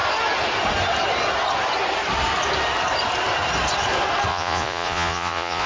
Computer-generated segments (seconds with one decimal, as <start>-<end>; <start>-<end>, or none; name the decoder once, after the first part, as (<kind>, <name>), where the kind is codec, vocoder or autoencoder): 4.3-5.7 (vocoder, Vocos)